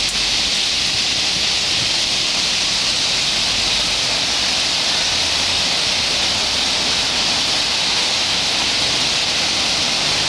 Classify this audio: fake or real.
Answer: real